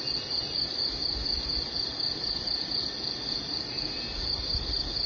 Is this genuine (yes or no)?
yes